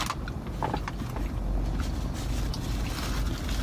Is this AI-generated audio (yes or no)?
no